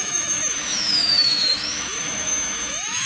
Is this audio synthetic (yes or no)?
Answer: yes